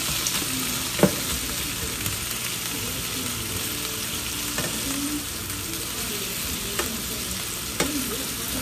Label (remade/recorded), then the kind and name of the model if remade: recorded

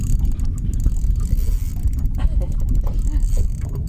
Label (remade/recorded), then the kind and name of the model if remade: recorded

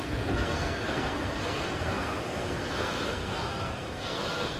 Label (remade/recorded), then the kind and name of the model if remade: remade, codec, SNAC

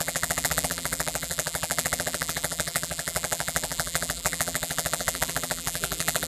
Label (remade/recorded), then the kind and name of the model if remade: remade, vocoder, BigVGAN v2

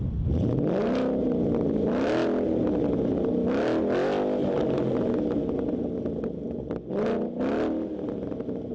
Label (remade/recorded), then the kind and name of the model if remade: recorded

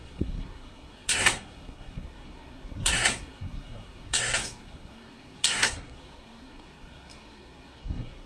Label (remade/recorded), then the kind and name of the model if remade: remade, codec, SNAC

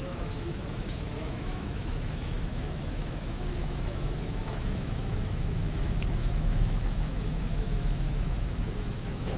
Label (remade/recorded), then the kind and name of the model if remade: remade, autoencoder, DAC-VAE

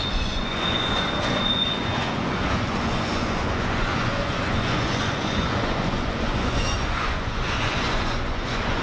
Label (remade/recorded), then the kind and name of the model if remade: remade, vocoder, Vocos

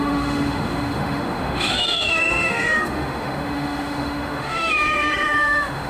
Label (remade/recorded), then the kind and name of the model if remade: remade, autoencoder, DAC-VAE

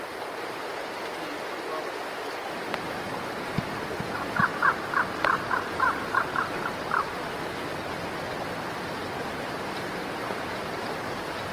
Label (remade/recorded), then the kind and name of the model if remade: recorded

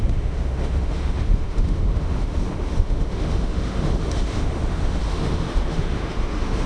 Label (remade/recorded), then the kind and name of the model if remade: remade, autoencoder, DAC-VAE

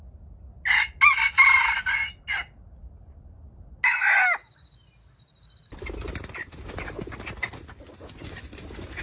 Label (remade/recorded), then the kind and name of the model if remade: recorded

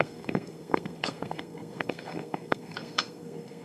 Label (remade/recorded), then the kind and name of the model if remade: remade, codec, SNAC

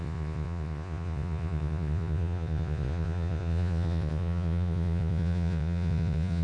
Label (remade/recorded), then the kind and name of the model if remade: remade, vocoder, Vocos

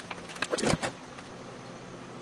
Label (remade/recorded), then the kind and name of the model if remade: recorded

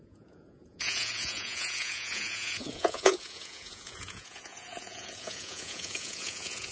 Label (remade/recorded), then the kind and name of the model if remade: remade, vocoder, Vocos